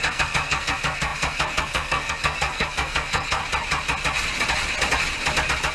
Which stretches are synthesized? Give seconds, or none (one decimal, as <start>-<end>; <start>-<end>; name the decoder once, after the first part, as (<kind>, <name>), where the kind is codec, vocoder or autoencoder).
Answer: 0.0-3.4 (codec, SNAC)